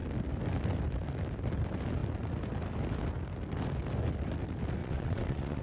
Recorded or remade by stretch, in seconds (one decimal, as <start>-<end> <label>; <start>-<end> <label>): 0.0-4.8 recorded; 4.8-5.6 remade